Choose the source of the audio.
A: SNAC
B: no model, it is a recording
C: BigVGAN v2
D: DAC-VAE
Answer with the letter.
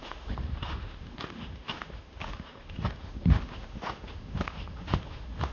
D